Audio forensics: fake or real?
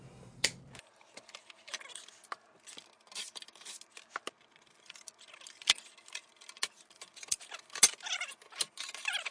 real